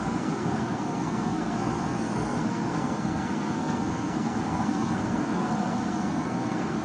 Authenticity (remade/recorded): remade